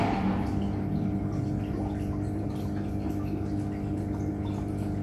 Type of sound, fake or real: real